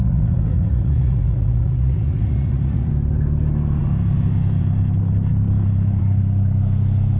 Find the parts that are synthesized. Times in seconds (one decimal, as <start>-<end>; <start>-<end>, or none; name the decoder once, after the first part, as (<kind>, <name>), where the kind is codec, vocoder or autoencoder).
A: 0.0-2.9 (vocoder, Vocos)